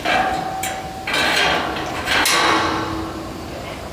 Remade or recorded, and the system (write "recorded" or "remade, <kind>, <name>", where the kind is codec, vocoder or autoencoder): recorded